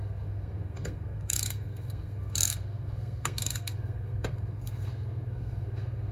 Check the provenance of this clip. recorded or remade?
remade